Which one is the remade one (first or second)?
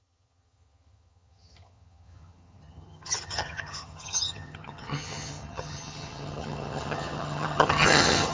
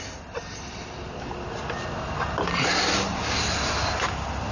first